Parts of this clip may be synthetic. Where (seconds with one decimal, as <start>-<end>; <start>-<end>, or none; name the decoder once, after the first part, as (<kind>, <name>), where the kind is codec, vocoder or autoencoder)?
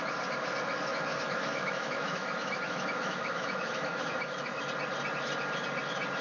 0.9-4.6 (autoencoder, DAC-VAE)